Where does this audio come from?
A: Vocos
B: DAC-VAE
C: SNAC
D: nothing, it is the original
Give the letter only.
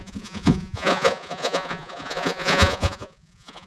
A